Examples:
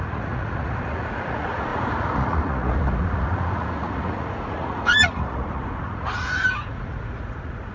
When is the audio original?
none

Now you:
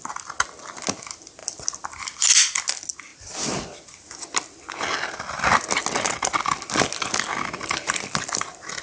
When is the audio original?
0.0-8.8

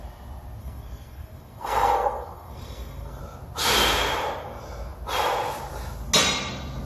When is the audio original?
0.0-0.6; 3.2-6.9

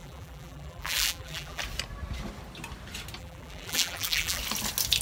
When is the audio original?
1.6-3.2; 4.4-5.0

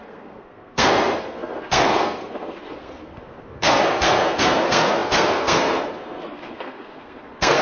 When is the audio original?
none

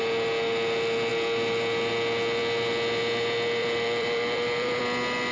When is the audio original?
0.0-3.6; 4.8-5.3

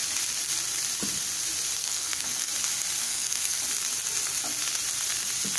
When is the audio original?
0.0-1.8; 2.5-3.0; 3.6-5.6

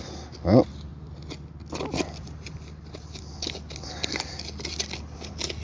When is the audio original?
0.0-5.6